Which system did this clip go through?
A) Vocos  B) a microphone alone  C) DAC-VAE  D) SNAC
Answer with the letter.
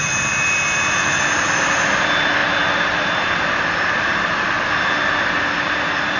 B